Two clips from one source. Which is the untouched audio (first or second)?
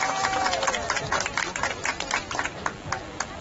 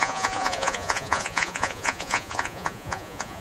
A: first